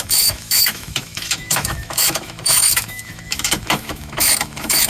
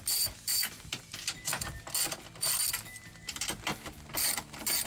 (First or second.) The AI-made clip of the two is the first